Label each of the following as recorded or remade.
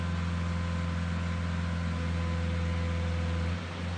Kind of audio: recorded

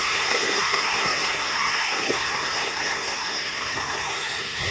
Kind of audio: remade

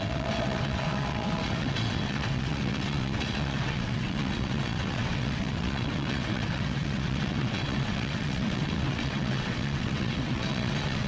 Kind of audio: remade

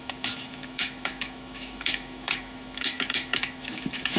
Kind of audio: remade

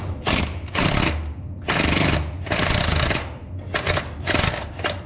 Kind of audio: recorded